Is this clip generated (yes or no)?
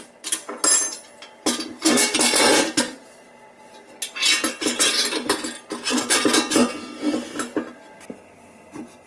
no